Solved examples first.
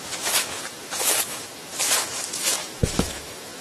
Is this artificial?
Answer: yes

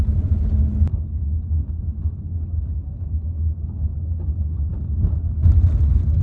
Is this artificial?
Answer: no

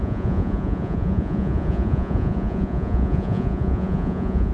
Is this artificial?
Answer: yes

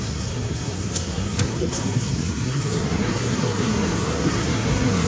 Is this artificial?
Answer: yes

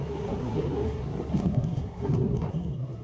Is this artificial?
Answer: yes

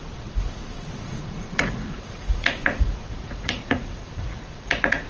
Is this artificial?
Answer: yes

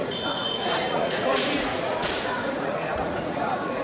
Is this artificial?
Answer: yes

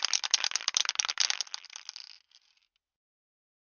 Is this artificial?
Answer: no